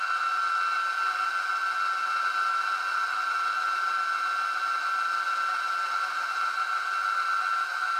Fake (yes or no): no